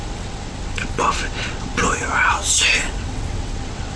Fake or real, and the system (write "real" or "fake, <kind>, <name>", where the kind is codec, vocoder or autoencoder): fake, vocoder, WaveNeXt